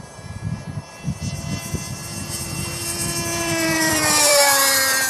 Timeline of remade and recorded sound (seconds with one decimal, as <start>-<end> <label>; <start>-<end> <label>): 0.0-5.1 remade